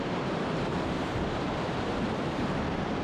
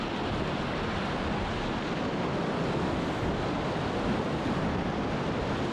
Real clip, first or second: second